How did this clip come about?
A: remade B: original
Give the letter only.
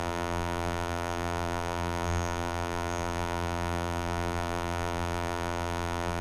A